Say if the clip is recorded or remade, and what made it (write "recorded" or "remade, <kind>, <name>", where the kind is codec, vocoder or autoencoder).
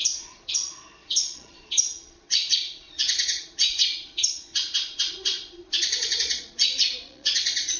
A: remade, vocoder, Vocos